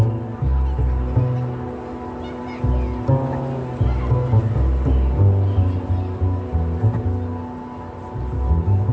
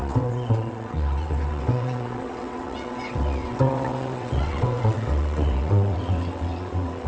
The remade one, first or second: second